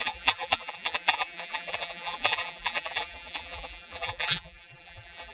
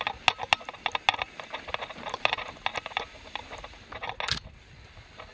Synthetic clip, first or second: first